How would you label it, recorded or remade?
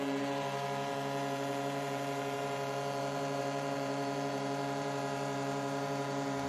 remade